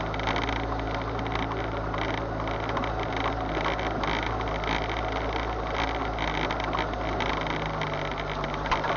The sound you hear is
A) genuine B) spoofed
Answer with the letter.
A